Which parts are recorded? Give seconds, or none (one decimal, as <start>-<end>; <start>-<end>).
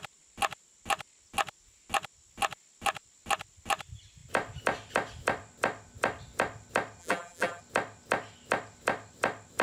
0.0-7.0; 7.6-9.6